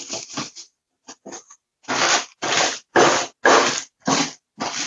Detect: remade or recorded recorded